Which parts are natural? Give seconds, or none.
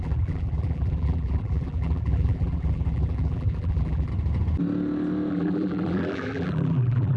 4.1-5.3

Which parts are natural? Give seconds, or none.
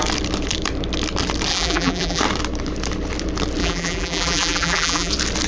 0.0-1.5; 2.2-3.6; 5.1-5.5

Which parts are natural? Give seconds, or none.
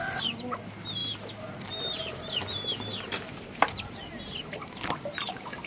0.0-1.0; 4.4-5.7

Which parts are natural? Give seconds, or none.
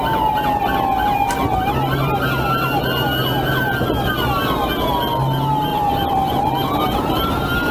0.0-5.7; 6.3-7.7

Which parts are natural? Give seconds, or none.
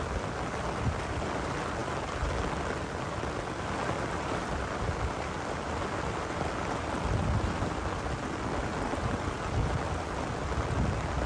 0.0-11.3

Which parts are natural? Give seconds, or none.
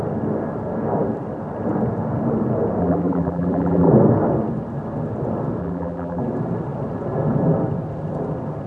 0.0-2.8; 3.9-5.6; 6.2-8.7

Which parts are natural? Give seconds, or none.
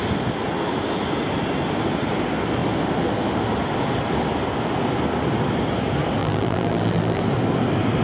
0.0-6.2; 7.2-8.0